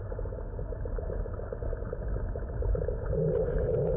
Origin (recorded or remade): recorded